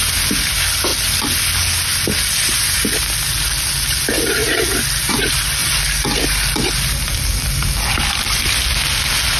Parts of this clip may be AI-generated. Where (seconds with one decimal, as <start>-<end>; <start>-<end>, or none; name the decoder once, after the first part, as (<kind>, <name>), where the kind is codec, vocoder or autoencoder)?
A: none